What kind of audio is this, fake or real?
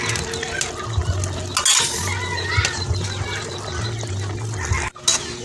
real